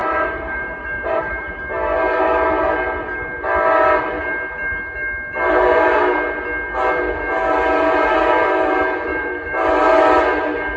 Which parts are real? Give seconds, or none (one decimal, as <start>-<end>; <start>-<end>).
1.5-9.1; 9.7-10.8

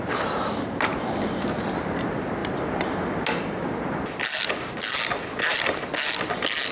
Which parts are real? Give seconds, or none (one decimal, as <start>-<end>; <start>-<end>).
0.0-0.9; 1.7-6.7

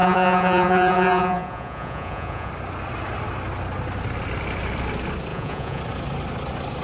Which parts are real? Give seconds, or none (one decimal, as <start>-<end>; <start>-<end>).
2.5-5.3; 5.8-6.8